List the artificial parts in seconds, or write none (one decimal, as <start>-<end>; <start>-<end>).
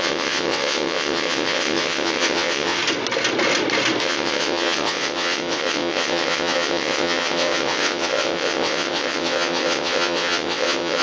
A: 0.0-2.8; 4.0-11.0